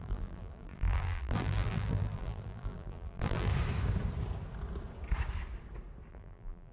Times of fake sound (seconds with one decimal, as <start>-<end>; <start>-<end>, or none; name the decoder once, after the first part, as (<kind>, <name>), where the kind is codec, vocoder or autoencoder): 0.0-3.5 (vocoder, BigVGAN v2); 6.1-6.7